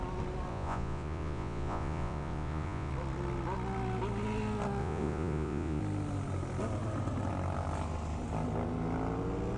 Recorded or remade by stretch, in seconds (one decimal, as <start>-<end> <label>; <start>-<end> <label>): 0.0-0.5 recorded; 0.5-2.9 remade; 2.9-4.8 recorded; 4.8-5.8 remade; 5.8-9.6 recorded